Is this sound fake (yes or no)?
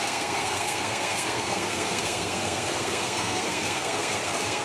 yes